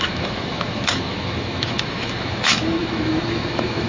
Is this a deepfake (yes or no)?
yes